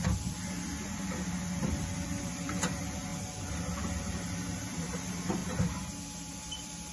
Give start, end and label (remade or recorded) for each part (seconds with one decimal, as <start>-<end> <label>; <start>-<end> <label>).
0.0-0.7 remade; 0.7-1.6 recorded; 1.6-3.1 remade; 3.1-4.0 recorded; 4.0-5.4 remade; 5.4-6.3 recorded; 6.3-6.9 remade